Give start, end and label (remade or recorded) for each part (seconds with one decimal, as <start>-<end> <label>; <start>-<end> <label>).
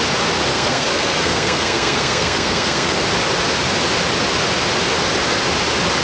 0.0-0.5 recorded; 0.5-3.0 remade; 3.0-6.0 recorded